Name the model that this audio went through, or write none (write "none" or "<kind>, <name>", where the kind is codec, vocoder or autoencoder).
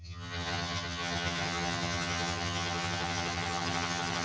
vocoder, HiFi-GAN